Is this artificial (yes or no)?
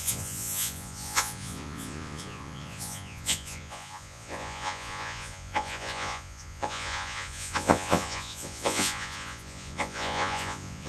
yes